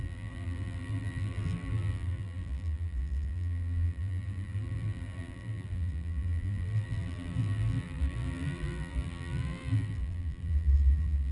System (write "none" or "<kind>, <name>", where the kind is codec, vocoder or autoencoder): vocoder, BigVGAN v2